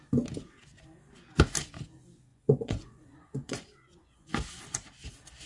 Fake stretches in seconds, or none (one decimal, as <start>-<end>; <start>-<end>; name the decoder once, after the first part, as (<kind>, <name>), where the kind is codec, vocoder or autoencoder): 2.3-4.3 (vocoder, Vocos)

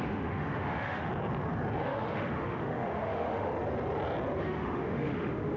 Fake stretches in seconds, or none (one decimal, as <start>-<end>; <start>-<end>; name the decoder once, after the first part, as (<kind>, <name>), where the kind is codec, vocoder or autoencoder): 0.0-1.1 (autoencoder, DAC-VAE); 1.8-3.5; 4.4-5.6

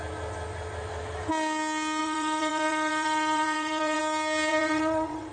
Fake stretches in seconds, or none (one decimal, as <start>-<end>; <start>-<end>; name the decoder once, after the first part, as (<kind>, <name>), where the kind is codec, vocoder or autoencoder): 2.0-4.0 (vocoder, WaveNeXt); 4.5-5.3

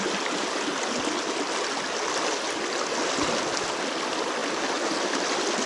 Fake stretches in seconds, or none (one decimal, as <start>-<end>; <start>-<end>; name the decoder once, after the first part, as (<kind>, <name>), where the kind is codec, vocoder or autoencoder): none

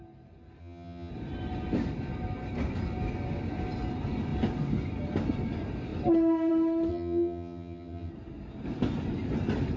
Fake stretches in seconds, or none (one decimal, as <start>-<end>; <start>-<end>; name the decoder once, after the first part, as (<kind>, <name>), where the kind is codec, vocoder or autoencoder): 0.6-1.1 (vocoder, HiFi-GAN); 6.9-8.1

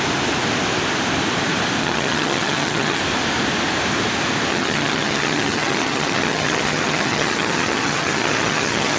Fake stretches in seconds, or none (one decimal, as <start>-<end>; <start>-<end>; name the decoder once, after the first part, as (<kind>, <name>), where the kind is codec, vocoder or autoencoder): 1.8-3.0 (vocoder, HiFi-GAN); 4.5-9.0

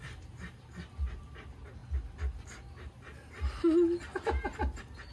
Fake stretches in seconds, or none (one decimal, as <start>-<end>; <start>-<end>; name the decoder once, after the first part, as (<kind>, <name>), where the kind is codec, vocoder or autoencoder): none

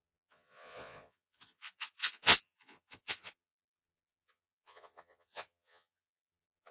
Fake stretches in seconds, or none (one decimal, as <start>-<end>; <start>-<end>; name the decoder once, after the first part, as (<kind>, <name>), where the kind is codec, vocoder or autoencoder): 0.0-6.7 (vocoder, Vocos)